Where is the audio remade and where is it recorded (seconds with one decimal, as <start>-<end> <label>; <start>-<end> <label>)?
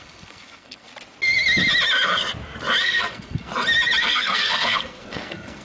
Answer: 0.0-0.9 remade; 0.9-2.8 recorded; 2.8-3.5 remade; 3.5-4.0 recorded; 4.0-5.6 remade